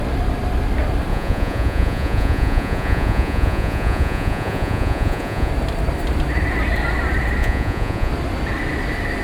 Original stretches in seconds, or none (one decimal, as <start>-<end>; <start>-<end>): 0.0-1.1; 5.5-7.4; 8.1-9.2